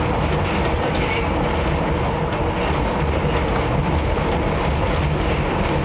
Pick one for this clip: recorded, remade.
recorded